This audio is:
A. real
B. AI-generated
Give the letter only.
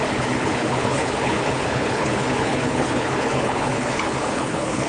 B